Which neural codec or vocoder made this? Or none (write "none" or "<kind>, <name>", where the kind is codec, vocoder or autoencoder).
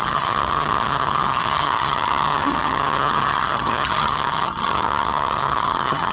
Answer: vocoder, HiFi-GAN